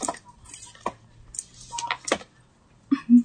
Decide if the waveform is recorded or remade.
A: recorded